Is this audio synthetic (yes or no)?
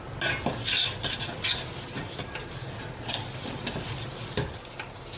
no